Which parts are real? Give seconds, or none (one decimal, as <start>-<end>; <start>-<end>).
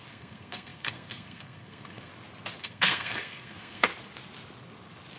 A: 2.1-2.6; 3.9-5.2